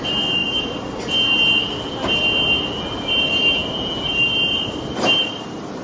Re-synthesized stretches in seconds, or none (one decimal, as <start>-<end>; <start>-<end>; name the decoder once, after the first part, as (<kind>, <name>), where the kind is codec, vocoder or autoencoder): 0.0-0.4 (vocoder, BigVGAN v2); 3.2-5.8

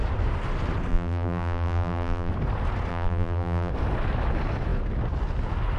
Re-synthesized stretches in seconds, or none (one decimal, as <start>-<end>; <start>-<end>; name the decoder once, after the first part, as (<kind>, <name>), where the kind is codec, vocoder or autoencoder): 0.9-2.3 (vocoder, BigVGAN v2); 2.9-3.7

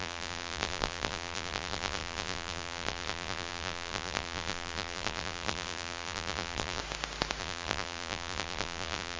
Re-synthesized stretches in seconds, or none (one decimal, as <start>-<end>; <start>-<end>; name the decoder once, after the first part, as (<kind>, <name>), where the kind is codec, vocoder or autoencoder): 0.0-6.8 (vocoder, BigVGAN v2); 7.4-9.2